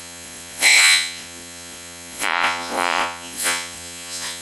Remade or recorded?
remade